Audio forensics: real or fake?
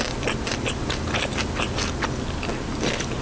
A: real